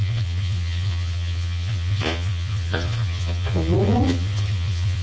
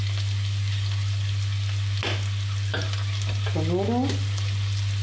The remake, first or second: first